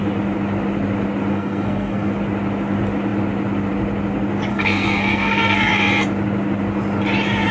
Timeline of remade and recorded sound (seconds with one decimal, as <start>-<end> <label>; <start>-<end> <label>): 0.0-1.3 recorded; 1.3-2.1 remade; 2.1-4.5 recorded; 4.5-5.7 remade; 5.7-7.5 recorded